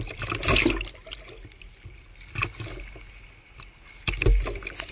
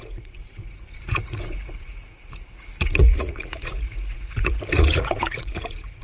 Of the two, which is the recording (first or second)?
first